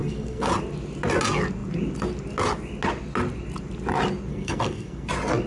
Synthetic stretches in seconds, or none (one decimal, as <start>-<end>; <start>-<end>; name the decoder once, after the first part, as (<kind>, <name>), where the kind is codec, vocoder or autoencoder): 0.0-0.5 (codec, SNAC); 4.3-5.1